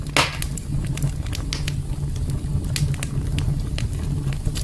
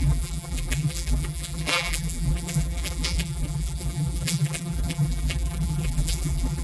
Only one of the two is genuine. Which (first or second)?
first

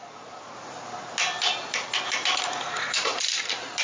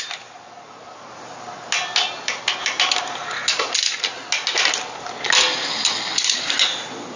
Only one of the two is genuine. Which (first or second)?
second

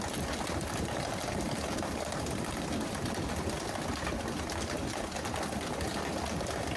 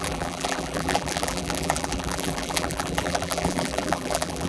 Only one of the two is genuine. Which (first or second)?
first